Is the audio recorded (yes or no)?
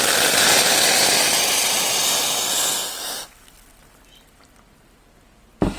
yes